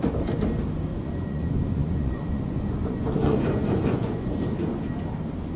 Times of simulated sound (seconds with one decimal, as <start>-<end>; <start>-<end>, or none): 0.9-4.3